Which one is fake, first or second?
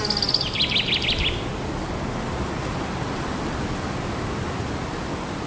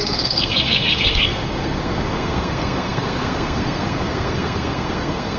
second